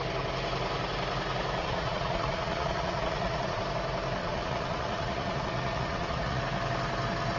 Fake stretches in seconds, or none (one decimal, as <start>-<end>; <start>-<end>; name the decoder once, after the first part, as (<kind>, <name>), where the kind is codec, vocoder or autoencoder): 1.6-3.6 (vocoder, Vocos); 4.2-6.4